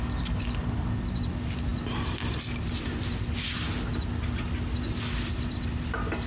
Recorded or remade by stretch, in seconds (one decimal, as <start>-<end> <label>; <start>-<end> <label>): 0.0-6.3 recorded